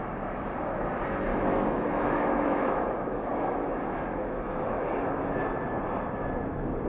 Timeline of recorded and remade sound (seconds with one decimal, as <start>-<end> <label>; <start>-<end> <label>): 0.0-1.3 recorded; 1.3-5.4 remade; 5.4-6.9 recorded